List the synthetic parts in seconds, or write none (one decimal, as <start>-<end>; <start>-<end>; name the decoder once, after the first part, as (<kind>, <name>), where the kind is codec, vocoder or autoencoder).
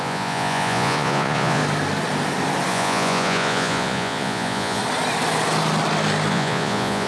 0.0-1.6 (vocoder, Vocos); 2.7-4.8; 6.3-7.1